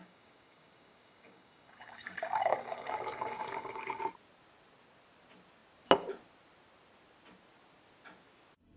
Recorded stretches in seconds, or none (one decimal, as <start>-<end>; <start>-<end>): 4.0-8.8